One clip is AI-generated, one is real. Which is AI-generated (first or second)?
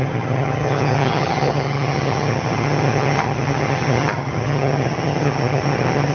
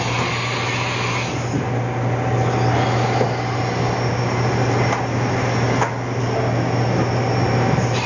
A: first